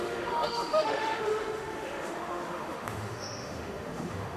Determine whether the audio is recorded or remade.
remade